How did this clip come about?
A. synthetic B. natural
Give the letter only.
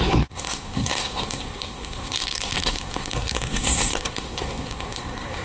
A